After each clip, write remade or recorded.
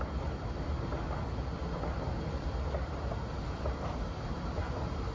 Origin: recorded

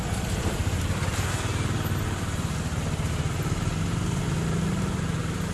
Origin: recorded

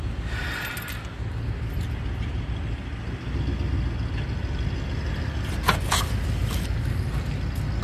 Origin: recorded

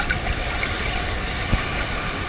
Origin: recorded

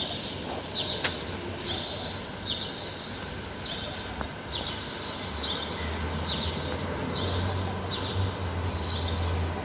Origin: recorded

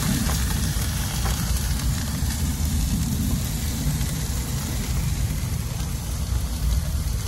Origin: remade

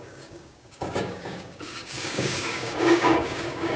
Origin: remade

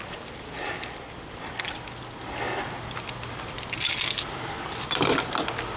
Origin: recorded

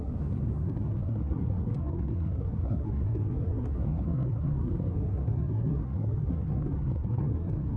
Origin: remade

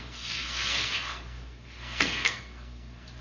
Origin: remade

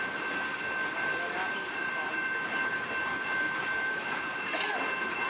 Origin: recorded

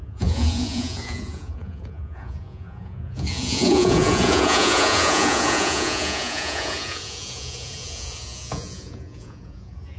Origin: remade